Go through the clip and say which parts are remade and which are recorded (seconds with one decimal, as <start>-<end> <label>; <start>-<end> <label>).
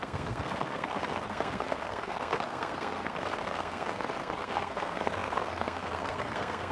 0.0-6.7 remade